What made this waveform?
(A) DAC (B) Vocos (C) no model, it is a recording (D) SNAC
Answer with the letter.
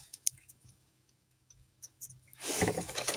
A